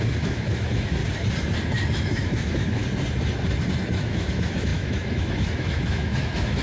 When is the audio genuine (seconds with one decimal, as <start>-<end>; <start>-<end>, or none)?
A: 1.0-1.9; 2.8-3.9